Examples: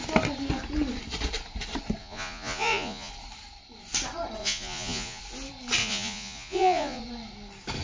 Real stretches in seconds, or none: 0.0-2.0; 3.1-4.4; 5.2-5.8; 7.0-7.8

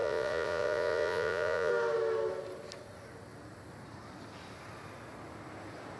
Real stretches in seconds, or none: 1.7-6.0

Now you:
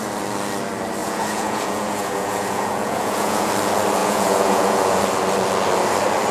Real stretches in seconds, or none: 0.0-1.0; 3.5-4.0; 5.0-6.3

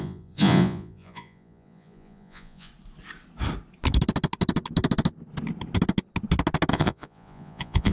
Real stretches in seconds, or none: 2.7-6.7

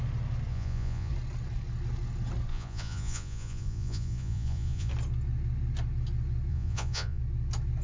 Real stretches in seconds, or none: 0.0-0.5; 1.1-2.5; 4.9-6.5; 7.2-7.8